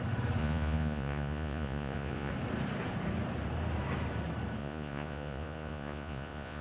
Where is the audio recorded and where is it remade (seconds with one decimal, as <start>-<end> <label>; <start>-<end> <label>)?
0.0-0.4 recorded; 0.4-2.3 remade; 2.3-4.6 recorded; 4.6-6.6 remade